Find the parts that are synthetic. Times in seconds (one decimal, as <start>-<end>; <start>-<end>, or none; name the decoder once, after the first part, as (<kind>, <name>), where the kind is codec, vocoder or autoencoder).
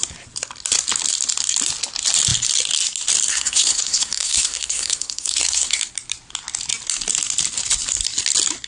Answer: 3.3-5.8 (codec, SNAC)